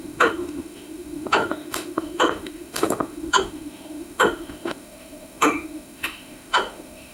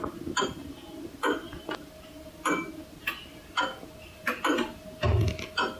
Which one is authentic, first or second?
second